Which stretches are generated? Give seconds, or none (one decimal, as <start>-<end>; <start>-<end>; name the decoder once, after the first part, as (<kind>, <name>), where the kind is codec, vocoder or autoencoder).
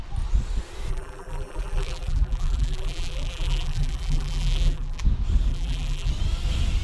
0.9-5.0 (vocoder, BigVGAN v2); 5.5-6.1